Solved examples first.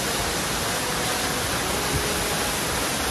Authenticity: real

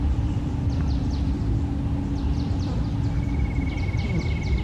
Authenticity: real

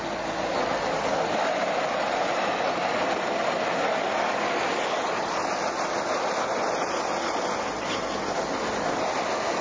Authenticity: real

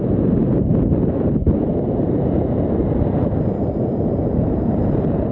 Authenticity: fake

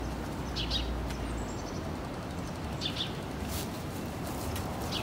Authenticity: real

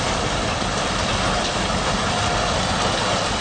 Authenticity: fake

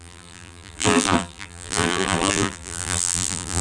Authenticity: fake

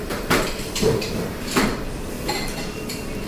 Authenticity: fake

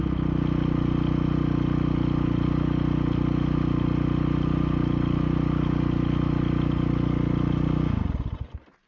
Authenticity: real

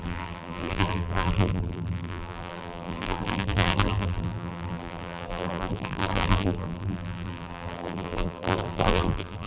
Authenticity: fake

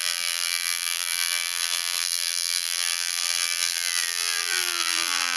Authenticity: fake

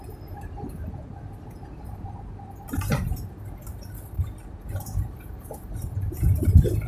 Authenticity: fake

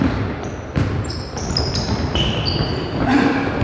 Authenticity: fake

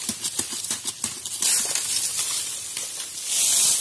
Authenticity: real